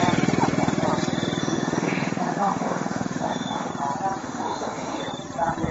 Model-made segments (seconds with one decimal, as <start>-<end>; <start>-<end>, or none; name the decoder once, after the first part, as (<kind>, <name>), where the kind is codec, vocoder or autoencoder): 1.4-3.7 (autoencoder, DAC-VAE); 4.2-5.0